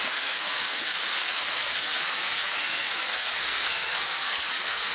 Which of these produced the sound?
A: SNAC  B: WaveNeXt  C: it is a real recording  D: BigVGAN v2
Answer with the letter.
A